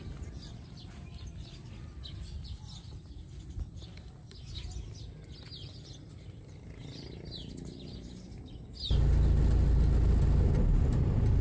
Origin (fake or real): real